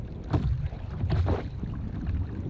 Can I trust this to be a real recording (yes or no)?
no